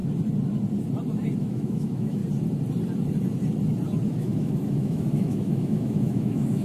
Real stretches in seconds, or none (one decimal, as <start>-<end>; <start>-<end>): 0.0-1.4; 2.2-4.1

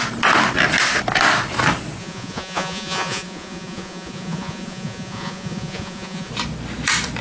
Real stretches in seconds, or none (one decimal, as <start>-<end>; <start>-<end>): 0.0-2.0; 6.3-7.2

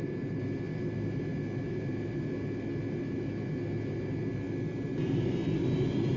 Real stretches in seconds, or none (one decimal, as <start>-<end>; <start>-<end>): 0.0-6.2

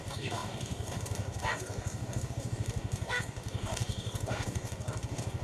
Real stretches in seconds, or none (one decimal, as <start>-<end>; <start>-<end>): none

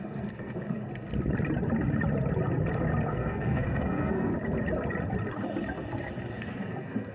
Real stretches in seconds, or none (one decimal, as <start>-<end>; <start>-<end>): 0.9-3.1; 4.3-6.3

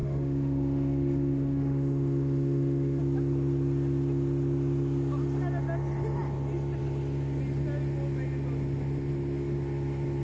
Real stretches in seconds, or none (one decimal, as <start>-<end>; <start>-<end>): 3.0-10.2